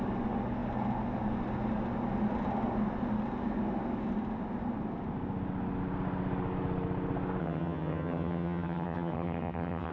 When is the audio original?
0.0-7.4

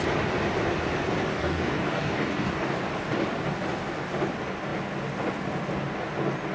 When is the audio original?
0.0-1.3; 2.8-6.5

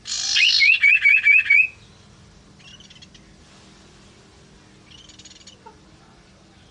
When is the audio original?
0.0-6.7